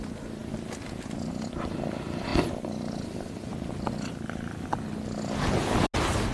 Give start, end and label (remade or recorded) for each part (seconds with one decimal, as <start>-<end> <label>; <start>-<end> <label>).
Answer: 0.0-6.3 recorded